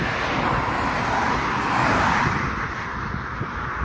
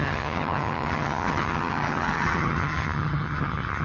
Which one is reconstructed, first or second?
second